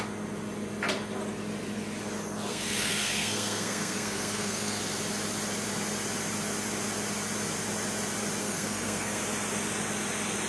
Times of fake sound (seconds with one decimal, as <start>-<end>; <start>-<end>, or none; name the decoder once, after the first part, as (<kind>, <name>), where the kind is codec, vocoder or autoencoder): 2.5-4.8 (codec, SNAC); 8.4-9.2